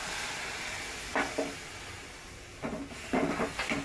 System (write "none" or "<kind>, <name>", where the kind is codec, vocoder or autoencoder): none